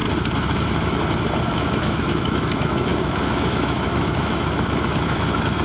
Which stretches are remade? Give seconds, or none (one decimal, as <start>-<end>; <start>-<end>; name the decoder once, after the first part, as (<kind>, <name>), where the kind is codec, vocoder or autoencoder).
1.5-5.6 (autoencoder, DAC-VAE)